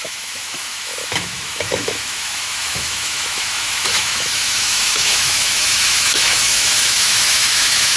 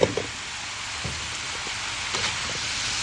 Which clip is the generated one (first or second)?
first